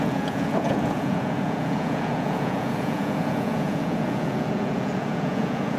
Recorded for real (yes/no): no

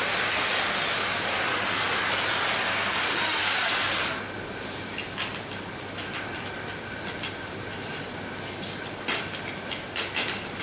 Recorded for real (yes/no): yes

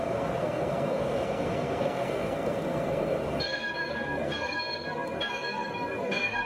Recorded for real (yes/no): no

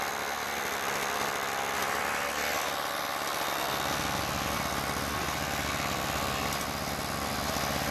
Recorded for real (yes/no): yes